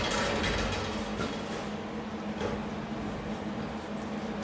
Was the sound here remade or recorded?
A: recorded